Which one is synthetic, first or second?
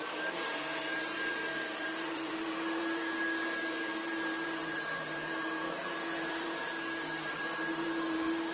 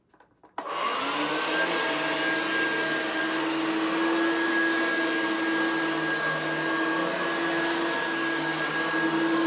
first